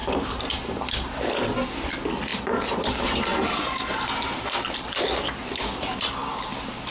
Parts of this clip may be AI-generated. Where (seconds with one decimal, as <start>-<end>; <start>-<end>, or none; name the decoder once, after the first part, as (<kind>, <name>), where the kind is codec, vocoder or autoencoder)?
0.0-0.6 (vocoder, BigVGAN v2); 2.3-2.8; 3.3-5.7